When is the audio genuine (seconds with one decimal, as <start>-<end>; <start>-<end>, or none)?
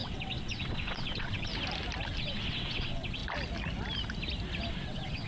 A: 1.5-2.2; 3.2-4.7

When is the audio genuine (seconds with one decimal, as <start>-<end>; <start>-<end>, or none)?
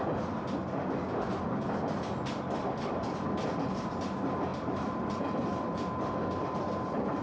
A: 0.0-4.5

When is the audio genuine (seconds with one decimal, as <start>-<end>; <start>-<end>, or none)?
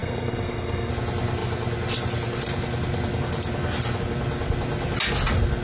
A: 0.9-5.6